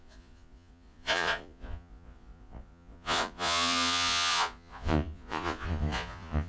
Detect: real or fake fake